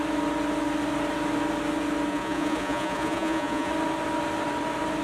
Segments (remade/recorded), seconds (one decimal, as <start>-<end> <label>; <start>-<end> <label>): 0.0-2.1 recorded; 2.1-3.7 remade; 3.7-5.0 recorded